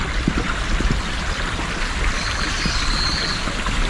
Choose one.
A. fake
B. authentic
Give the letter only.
B